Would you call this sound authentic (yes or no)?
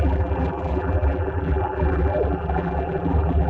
no